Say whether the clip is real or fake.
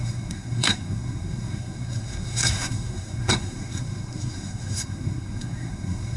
fake